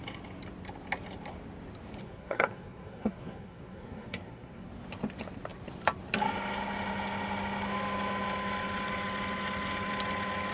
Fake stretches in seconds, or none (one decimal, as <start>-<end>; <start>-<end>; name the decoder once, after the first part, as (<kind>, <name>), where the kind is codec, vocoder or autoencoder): 2.0-4.7 (codec, SNAC)